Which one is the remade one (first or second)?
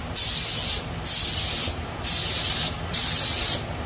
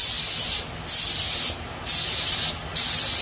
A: first